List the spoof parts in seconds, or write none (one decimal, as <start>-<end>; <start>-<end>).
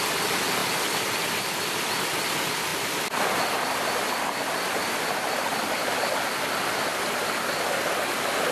none